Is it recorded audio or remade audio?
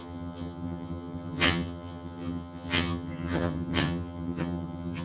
remade